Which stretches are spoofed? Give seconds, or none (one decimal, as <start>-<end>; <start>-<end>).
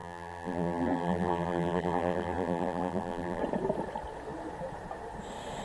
0.0-3.4